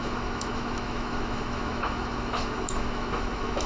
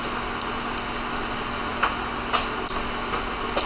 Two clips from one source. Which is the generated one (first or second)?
first